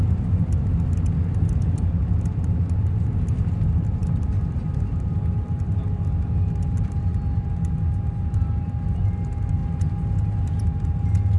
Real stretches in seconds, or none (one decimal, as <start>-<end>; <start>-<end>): 0.0-11.4